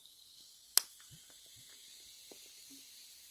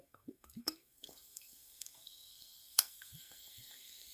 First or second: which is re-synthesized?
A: second